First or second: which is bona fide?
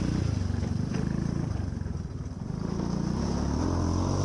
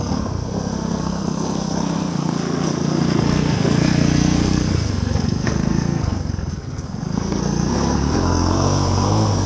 first